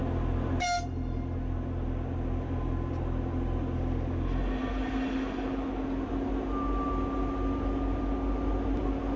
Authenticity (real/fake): real